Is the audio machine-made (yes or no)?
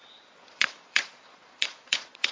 yes